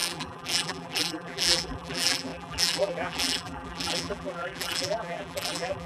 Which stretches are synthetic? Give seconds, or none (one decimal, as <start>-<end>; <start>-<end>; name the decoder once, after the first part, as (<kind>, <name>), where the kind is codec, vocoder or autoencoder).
0.0-5.9 (vocoder, BigVGAN v2)